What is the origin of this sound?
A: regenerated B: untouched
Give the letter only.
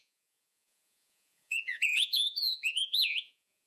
A